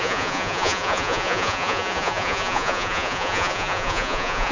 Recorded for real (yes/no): no